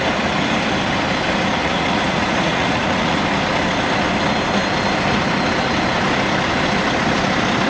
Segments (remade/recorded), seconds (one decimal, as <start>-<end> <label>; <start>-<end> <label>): 0.0-1.6 recorded; 1.6-3.2 remade; 3.2-7.7 recorded